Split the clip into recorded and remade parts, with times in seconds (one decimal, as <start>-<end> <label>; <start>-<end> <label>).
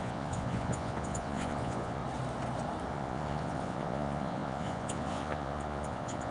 0.0-2.0 remade; 2.0-2.9 recorded; 2.9-6.3 remade